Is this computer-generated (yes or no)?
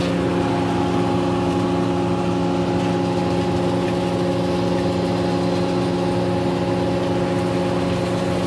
no